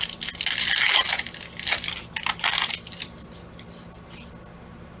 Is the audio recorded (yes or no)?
yes